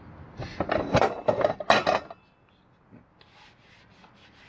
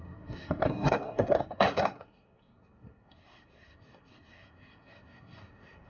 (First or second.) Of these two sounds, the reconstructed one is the second